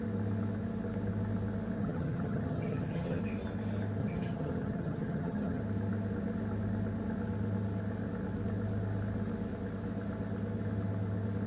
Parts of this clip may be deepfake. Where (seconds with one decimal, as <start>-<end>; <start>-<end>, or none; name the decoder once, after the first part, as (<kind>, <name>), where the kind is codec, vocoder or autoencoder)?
1.8-3.2 (vocoder, HiFi-GAN); 4.0-5.6